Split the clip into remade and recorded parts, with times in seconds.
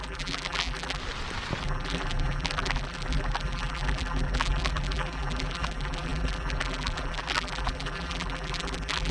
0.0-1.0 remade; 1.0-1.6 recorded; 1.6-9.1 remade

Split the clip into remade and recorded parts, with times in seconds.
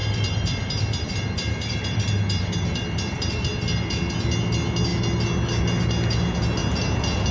0.0-4.0 remade; 4.0-7.3 recorded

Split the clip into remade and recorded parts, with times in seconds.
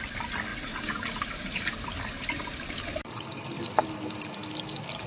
0.0-0.5 recorded; 0.5-3.6 remade; 3.6-5.1 recorded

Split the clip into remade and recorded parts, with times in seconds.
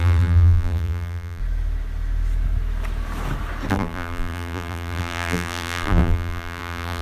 0.0-1.4 remade; 1.4-3.7 recorded; 3.7-7.0 remade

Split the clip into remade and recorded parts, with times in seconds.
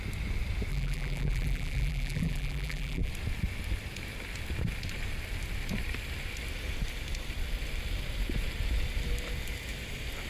0.0-0.7 recorded; 0.7-3.1 remade; 3.1-10.3 recorded